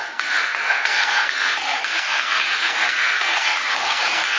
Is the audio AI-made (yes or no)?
yes